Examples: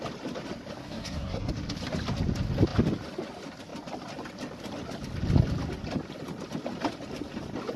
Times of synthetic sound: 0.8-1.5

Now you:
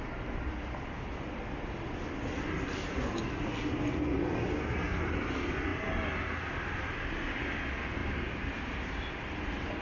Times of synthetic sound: 8.0-9.1

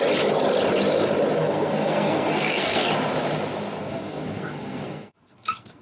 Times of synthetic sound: 1.4-2.9; 3.8-5.8

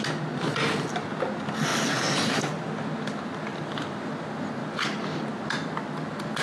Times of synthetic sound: 3.5-4.0; 4.6-5.2

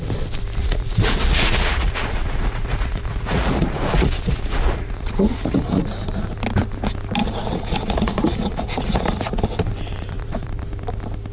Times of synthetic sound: 0.6-5.8; 7.2-9.4; 9.9-10.5